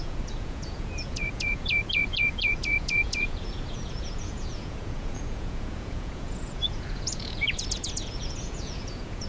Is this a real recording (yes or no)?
no